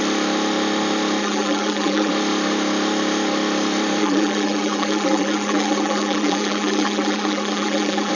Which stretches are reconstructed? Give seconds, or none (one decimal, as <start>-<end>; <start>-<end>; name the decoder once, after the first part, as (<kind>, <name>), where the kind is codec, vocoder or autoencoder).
1.2-2.1 (vocoder, BigVGAN v2); 4.0-8.1

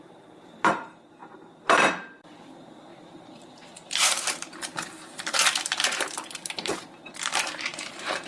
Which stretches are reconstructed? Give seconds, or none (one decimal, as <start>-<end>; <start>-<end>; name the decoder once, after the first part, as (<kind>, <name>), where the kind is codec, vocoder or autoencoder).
0.0-8.3 (vocoder, BigVGAN v2)

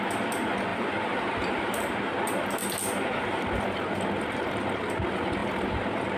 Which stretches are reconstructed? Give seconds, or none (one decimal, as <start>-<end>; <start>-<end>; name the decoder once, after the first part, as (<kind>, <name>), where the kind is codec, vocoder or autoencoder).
0.7-1.7 (vocoder, BigVGAN v2)

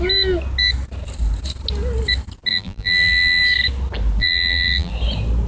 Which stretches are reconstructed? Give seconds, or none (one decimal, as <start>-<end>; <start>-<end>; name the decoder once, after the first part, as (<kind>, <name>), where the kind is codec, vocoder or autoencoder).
2.5-3.4 (vocoder, BigVGAN v2); 4.2-4.9

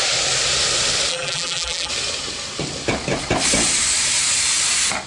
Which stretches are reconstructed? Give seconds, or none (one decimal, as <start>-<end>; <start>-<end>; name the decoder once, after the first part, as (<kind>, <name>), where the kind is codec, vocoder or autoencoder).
1.1-1.9 (vocoder, BigVGAN v2)

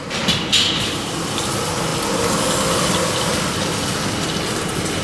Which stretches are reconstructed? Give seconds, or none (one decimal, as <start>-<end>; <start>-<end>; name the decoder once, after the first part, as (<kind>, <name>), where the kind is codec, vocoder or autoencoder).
3.3-3.9 (vocoder, BigVGAN v2)

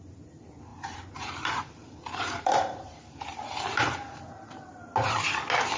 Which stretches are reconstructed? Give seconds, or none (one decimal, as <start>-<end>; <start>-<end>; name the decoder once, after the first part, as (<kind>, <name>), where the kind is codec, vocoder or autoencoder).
0.7-4.2 (vocoder, BigVGAN v2)

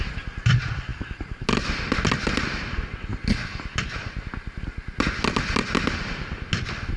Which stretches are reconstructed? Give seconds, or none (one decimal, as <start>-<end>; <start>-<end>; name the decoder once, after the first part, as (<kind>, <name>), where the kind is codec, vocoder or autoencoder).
none